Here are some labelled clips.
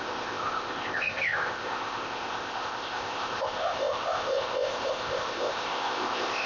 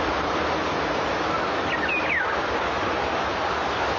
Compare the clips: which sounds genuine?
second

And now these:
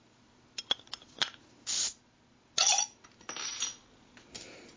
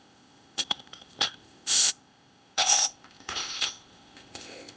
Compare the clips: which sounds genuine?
first